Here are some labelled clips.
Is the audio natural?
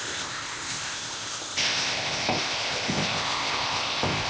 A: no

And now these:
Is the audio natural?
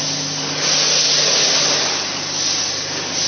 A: yes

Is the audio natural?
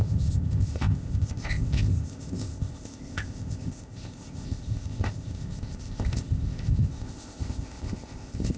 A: no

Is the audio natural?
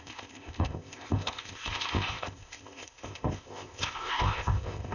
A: no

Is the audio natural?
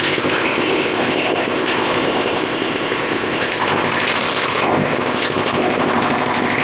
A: no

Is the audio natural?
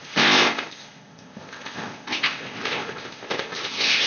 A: no